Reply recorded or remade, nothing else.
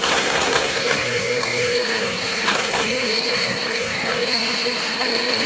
remade